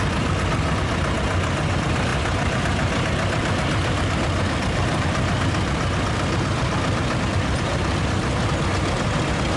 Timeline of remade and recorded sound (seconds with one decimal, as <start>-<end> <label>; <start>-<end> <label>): 0.0-9.6 recorded